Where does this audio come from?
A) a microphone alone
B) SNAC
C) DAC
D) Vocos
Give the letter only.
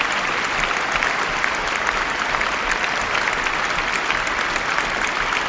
A